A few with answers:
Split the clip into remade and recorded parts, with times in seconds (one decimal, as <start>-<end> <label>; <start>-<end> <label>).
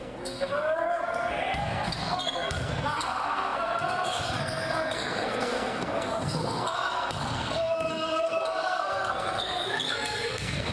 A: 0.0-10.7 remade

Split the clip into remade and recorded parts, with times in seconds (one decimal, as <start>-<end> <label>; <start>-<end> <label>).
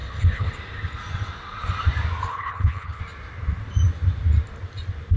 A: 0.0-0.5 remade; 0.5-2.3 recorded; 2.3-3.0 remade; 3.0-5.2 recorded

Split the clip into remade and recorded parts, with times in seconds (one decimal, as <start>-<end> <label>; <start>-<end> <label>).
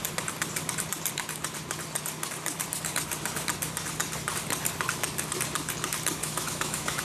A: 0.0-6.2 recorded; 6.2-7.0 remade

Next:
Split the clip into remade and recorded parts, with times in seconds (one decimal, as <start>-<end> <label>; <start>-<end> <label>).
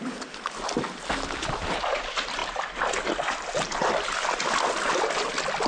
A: 0.0-5.7 recorded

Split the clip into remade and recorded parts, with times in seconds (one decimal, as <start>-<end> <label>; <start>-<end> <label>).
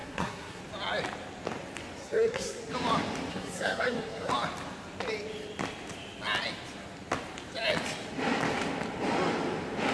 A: 0.0-0.6 remade; 0.6-2.0 recorded; 2.0-2.6 remade; 2.6-3.3 recorded; 3.3-4.3 remade; 4.3-9.9 recorded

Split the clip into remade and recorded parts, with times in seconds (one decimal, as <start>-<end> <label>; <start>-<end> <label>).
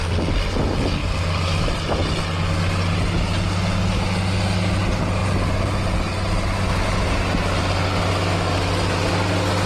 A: 0.0-1.0 recorded; 1.0-2.2 remade; 2.2-9.7 recorded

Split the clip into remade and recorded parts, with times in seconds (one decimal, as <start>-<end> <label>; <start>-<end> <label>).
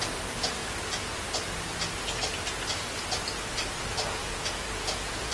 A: 0.0-4.2 recorded; 4.2-5.3 remade